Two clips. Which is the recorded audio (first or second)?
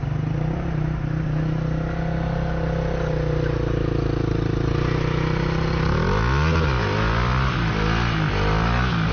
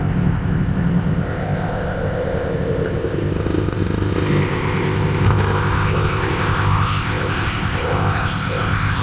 first